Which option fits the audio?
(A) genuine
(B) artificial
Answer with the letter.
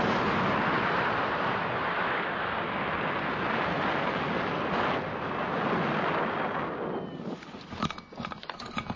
A